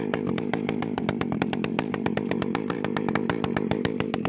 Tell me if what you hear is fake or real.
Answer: fake